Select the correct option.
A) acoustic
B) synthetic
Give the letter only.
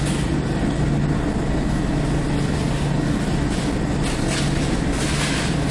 A